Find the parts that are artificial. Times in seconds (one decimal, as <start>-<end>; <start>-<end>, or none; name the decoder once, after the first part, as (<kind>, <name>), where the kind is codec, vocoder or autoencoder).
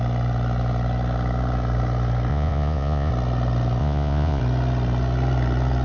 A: 2.3-3.1 (vocoder, Vocos); 3.8-4.4